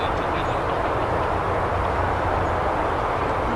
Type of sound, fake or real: real